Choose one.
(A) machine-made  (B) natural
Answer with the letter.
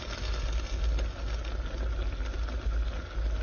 B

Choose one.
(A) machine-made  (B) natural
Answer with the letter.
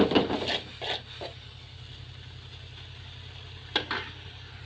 B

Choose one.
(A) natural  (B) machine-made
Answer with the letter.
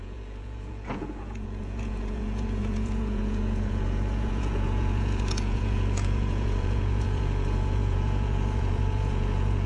B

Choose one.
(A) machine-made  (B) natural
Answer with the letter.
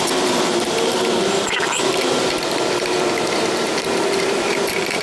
A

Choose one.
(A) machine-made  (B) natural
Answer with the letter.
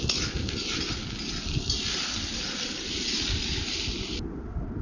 B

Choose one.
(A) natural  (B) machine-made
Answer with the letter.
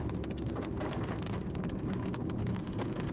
B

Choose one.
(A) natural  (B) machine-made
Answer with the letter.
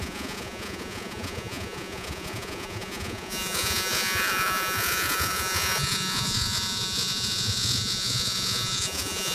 B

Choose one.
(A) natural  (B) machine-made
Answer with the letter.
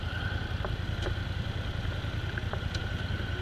A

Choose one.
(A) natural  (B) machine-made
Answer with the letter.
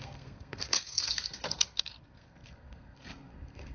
B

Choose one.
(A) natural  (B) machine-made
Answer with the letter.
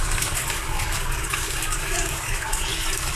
B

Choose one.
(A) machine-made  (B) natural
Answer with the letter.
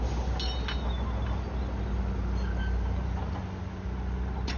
B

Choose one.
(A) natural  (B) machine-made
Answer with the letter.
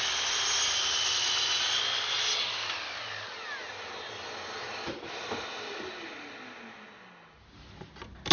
A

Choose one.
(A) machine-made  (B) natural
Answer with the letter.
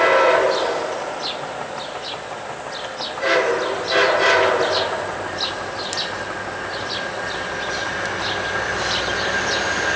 B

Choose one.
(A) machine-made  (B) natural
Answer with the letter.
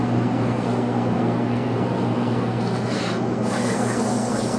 A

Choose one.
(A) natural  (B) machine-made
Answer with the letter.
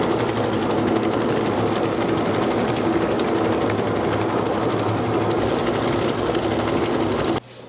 A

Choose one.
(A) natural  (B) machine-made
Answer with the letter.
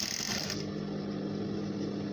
A